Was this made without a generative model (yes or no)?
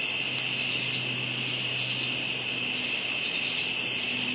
yes